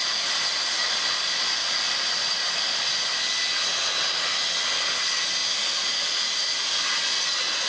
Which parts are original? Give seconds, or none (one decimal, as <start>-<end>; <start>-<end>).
0.0-7.7